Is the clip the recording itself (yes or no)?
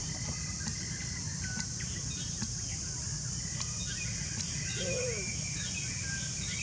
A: yes